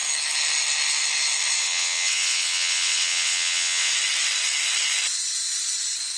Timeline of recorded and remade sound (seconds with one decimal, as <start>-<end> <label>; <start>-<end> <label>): 0.0-1.6 recorded; 1.6-3.9 remade; 3.9-6.2 recorded